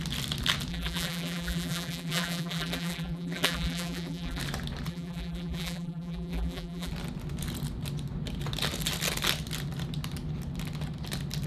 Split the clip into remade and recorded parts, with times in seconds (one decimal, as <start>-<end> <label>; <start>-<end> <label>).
0.0-0.7 recorded; 0.7-4.4 remade; 4.4-4.9 recorded; 4.9-6.9 remade; 6.9-11.5 recorded